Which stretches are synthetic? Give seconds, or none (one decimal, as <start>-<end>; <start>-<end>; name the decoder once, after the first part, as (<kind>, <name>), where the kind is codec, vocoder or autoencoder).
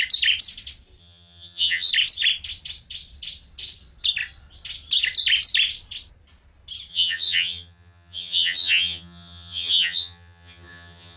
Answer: 1.0-1.9 (vocoder, HiFi-GAN); 6.9-11.2